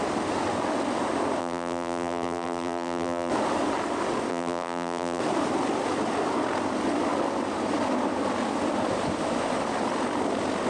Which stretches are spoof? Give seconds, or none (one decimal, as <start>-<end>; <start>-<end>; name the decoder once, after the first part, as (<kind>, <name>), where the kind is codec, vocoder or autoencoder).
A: 1.4-3.3 (vocoder, BigVGAN v2); 4.3-5.2